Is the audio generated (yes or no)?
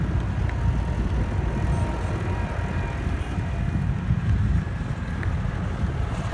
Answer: no